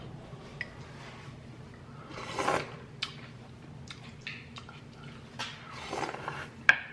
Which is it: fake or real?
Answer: real